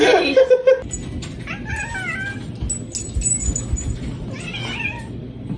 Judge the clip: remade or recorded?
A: recorded